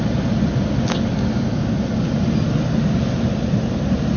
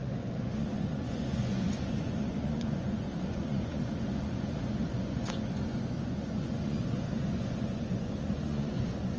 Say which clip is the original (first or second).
first